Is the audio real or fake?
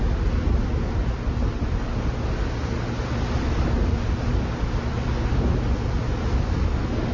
real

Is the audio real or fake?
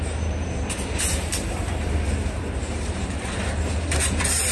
fake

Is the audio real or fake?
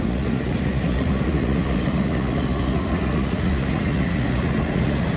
fake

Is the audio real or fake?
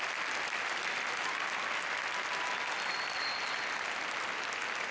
real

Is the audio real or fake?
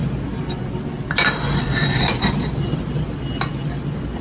real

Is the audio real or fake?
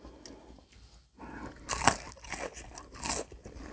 real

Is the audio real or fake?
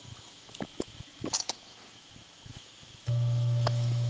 fake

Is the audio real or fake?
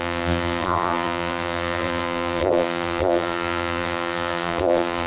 fake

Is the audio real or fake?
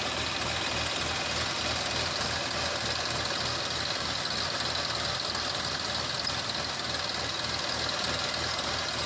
real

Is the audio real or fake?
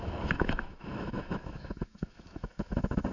fake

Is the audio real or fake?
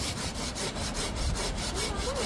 fake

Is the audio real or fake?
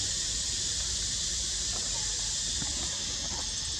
real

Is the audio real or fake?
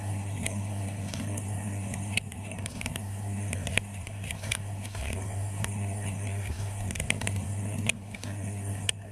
fake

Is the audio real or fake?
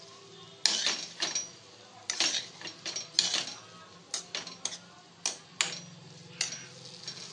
real